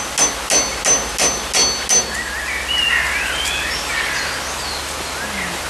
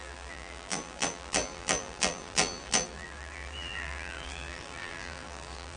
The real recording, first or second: first